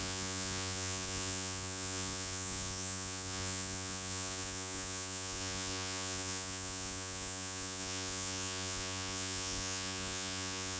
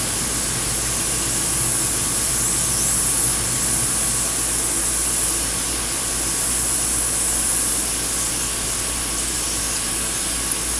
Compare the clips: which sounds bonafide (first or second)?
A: second